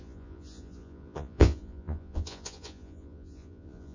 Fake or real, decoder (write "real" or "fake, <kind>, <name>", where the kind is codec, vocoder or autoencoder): fake, vocoder, Vocos